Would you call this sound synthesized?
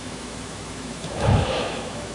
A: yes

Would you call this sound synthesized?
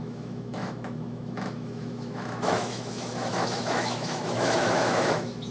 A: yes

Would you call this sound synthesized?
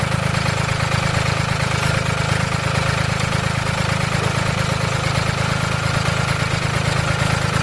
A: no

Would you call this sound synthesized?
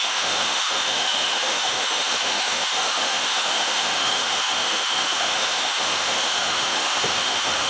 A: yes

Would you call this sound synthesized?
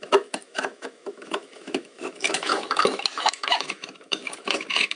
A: yes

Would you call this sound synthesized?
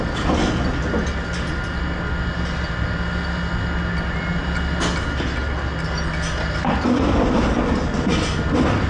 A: no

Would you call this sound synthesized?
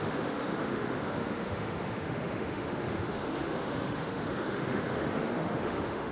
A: yes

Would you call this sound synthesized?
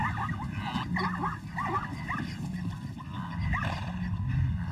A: no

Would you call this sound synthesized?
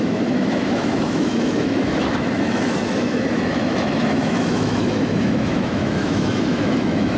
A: yes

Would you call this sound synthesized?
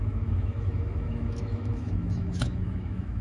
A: yes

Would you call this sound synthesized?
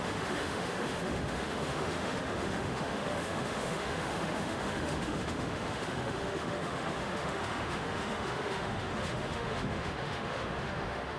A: yes